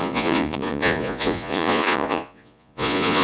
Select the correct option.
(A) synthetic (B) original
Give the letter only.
A